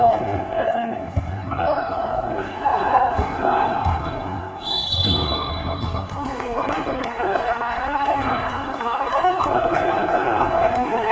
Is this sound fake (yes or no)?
yes